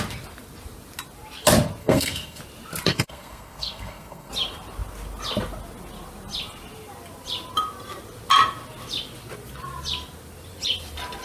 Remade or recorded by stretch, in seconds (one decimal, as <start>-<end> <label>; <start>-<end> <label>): 0.0-1.8 recorded; 1.8-2.4 remade; 2.4-2.9 recorded; 2.9-4.3 remade; 4.3-11.2 recorded

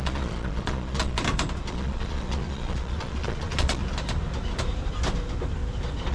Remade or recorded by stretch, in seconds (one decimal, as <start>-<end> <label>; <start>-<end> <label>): 0.0-1.2 remade; 1.2-1.7 recorded; 1.7-3.8 remade; 3.8-6.1 recorded

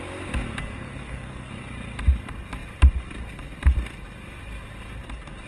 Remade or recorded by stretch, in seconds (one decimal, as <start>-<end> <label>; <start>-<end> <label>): 0.0-0.6 recorded; 0.6-1.5 remade; 1.5-5.5 recorded

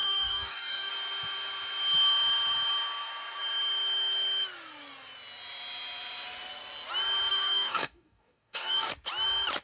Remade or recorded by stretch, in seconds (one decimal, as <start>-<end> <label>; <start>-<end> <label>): 0.0-0.9 remade; 0.9-7.3 recorded; 7.3-8.9 remade; 8.9-9.6 recorded